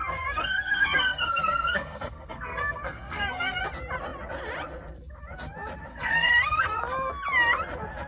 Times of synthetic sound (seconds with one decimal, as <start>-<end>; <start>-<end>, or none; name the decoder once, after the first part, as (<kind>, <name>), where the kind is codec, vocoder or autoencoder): 0.0-3.6 (codec, SNAC); 5.9-6.8